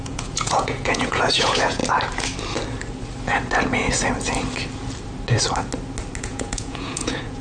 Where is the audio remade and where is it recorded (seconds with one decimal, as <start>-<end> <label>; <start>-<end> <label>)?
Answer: 0.0-1.8 remade; 1.8-6.2 recorded; 6.2-7.4 remade